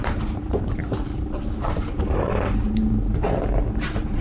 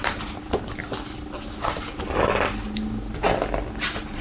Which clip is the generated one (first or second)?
first